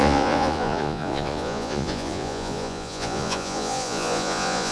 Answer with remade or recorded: remade